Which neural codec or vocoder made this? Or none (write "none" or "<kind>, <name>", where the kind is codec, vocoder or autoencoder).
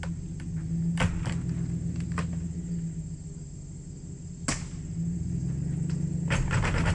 none